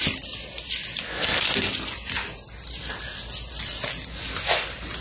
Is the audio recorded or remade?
recorded